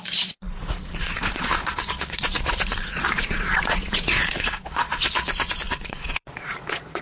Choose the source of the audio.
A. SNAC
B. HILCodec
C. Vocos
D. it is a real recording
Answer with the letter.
C